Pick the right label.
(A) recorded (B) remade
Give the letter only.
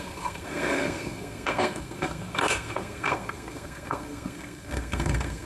B